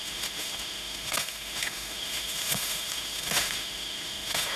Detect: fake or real fake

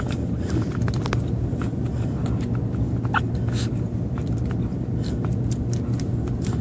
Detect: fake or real real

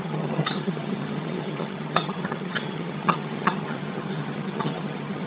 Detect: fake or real fake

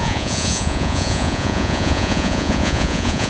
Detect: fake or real fake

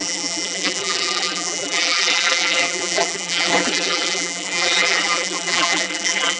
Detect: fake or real fake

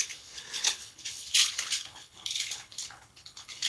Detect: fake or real fake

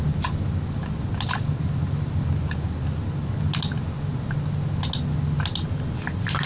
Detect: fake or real real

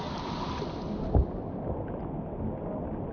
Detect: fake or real real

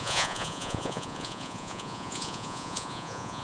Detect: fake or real fake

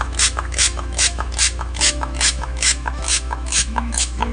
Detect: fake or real fake